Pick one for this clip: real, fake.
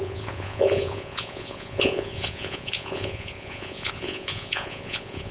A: fake